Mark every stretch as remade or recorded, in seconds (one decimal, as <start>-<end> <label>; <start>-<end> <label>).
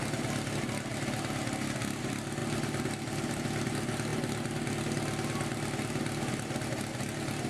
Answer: 0.0-7.5 recorded